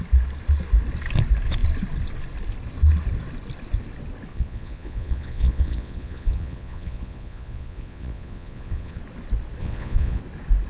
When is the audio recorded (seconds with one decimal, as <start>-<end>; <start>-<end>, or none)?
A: 0.0-4.3; 9.0-9.6; 10.2-10.7

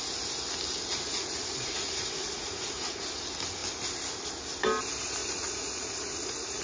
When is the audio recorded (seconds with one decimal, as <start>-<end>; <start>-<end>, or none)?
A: 0.0-0.9; 3.0-5.2

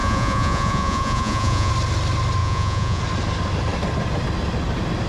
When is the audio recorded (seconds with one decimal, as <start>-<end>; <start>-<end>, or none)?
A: 1.7-2.4; 3.0-5.1